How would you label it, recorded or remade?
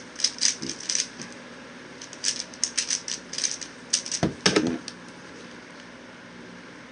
recorded